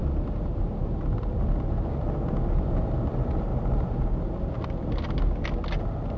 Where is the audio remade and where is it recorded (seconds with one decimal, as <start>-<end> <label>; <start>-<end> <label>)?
0.0-1.6 remade; 1.6-3.5 recorded; 3.5-4.0 remade; 4.0-6.2 recorded